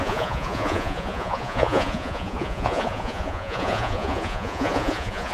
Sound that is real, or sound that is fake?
fake